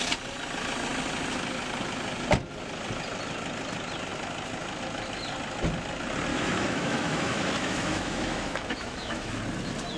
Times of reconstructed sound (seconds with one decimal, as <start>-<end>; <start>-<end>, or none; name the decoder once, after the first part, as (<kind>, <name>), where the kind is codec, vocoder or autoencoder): 6.3-9.3 (autoencoder, DAC-VAE)